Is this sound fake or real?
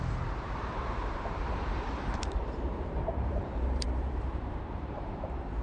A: fake